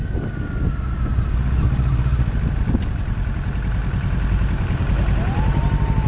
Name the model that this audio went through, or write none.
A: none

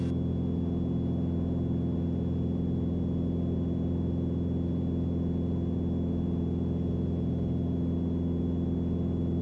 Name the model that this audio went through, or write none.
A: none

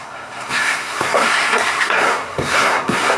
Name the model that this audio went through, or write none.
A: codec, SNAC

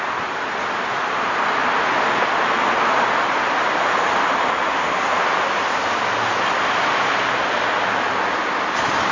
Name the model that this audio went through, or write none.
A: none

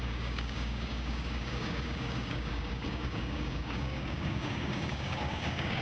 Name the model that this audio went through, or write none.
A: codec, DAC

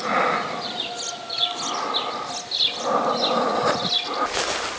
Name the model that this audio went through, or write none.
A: none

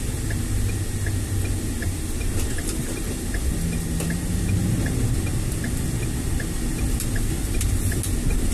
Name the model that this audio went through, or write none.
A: none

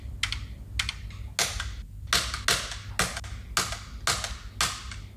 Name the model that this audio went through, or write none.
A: none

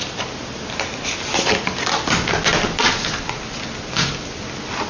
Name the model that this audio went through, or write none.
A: none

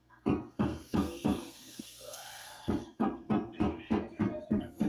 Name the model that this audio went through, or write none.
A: codec, SNAC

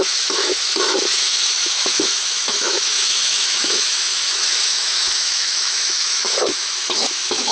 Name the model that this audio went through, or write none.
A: autoencoder, DAC-VAE